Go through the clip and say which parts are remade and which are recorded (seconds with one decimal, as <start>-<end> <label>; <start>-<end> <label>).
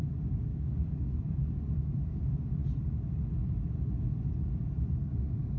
0.0-0.5 recorded; 0.5-2.2 remade; 2.2-5.6 recorded